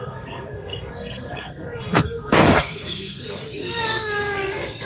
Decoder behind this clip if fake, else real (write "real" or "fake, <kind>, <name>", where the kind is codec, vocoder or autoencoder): fake, codec, SNAC